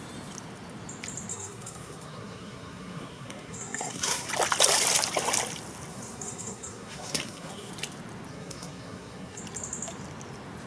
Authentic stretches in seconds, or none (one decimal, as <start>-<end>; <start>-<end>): 0.0-1.3; 4.3-5.9; 7.7-8.3; 9.4-10.7